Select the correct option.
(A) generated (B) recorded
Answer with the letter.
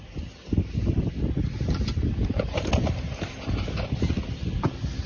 B